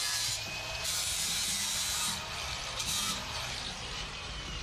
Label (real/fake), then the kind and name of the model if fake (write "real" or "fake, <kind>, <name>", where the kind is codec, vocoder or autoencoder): fake, vocoder, BigVGAN v2